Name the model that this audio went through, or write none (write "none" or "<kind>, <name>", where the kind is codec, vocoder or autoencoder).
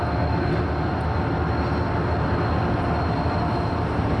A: none